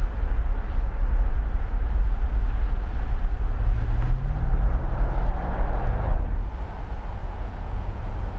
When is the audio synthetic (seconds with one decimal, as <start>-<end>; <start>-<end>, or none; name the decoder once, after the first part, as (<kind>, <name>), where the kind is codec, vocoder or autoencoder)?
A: 7.2-8.0 (vocoder, Vocos)